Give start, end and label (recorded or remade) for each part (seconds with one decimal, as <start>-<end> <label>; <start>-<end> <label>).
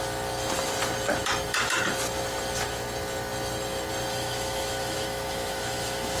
0.0-4.1 recorded; 4.1-6.2 remade